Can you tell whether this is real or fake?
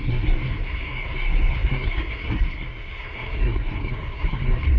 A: fake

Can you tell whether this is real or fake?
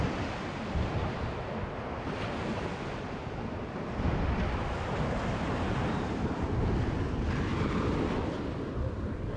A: real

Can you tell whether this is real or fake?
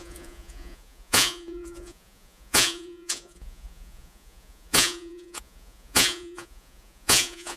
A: fake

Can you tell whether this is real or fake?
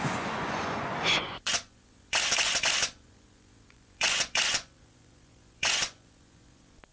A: fake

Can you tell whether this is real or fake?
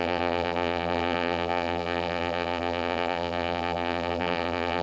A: fake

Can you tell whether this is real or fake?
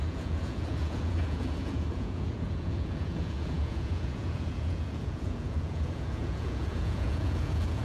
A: fake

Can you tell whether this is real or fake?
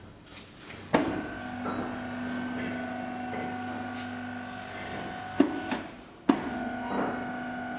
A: real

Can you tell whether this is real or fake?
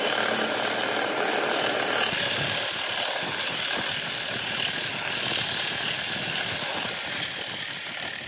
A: real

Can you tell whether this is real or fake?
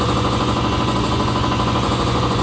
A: fake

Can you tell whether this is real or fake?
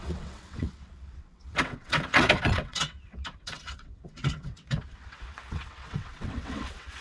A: fake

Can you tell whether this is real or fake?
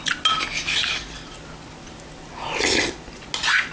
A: real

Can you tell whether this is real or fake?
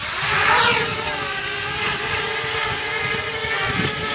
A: real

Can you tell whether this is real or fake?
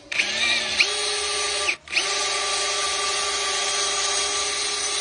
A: real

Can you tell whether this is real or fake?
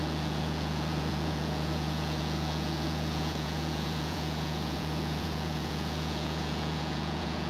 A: fake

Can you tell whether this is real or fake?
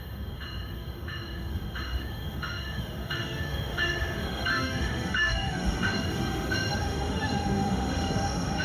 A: fake